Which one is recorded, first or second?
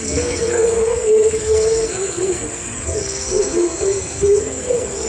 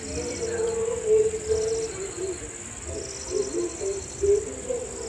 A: second